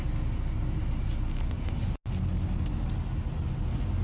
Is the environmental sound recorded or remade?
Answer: recorded